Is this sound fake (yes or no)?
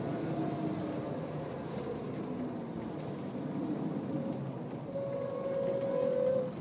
no